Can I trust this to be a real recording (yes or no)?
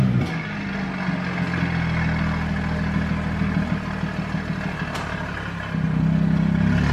yes